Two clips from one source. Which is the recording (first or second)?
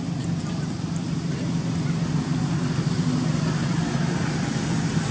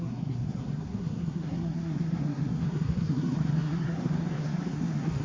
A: first